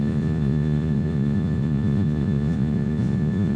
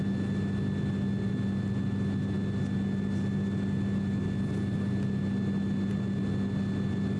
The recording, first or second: second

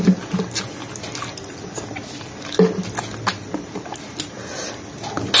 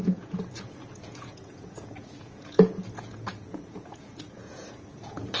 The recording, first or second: first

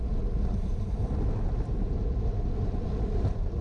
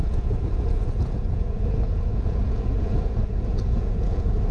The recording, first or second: first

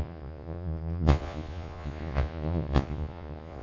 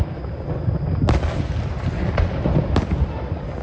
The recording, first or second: second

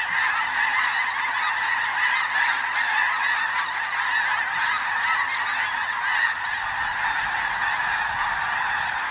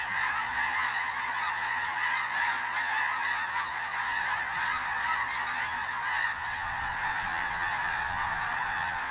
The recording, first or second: first